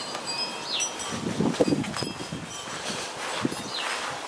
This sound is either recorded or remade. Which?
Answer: recorded